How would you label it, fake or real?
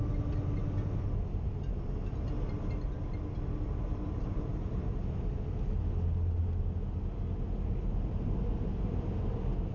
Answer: real